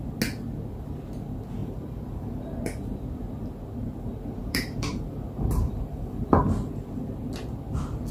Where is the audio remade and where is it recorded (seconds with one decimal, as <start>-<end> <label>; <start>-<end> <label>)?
0.0-1.6 recorded; 1.6-2.4 remade; 2.4-4.4 recorded; 4.4-6.8 remade; 6.8-8.1 recorded